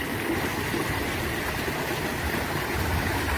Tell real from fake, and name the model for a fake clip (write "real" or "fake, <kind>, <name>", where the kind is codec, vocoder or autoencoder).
real